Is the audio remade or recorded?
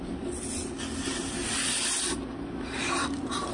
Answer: recorded